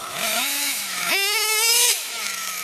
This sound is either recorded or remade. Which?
remade